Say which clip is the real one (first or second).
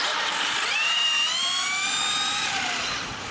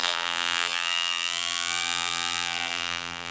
first